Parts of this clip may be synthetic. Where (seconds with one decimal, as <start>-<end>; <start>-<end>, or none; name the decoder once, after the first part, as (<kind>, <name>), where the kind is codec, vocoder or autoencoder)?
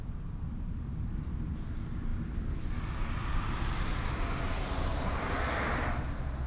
none